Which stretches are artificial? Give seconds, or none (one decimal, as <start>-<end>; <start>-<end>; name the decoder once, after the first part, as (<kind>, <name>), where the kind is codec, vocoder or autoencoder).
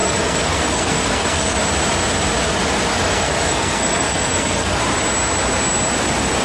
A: 0.0-1.6 (codec, SNAC); 2.9-4.8